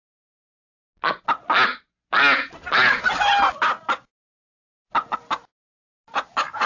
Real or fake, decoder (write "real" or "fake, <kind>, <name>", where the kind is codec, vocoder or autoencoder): real